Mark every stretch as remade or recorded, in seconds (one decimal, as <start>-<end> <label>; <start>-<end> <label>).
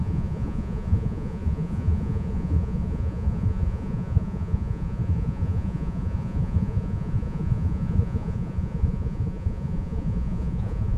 0.0-11.0 remade